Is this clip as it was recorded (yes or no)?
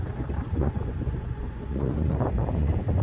no